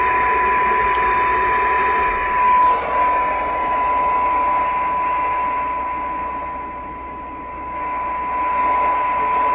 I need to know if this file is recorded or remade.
recorded